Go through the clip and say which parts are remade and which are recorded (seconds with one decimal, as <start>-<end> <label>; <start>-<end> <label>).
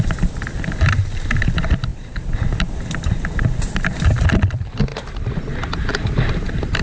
0.0-4.9 recorded; 4.9-5.4 remade; 5.4-6.8 recorded